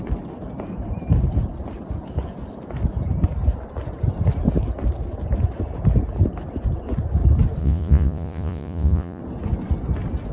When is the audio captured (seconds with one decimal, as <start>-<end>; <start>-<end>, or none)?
0.0-7.6; 9.2-10.3